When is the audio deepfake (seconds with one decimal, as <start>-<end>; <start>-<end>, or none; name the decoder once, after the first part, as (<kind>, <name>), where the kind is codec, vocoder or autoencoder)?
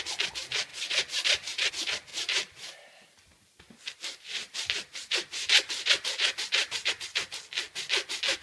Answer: 0.7-1.7 (vocoder, BigVGAN v2); 2.1-6.9